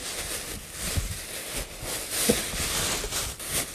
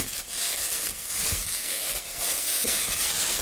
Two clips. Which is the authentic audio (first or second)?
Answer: first